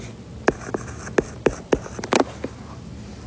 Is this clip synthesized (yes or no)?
no